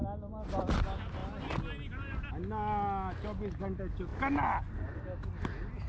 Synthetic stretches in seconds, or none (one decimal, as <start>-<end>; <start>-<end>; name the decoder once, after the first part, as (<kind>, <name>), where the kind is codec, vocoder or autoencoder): none